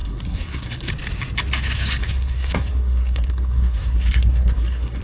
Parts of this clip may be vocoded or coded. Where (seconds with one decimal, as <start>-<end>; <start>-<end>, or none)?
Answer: 0.0-0.9; 2.0-5.0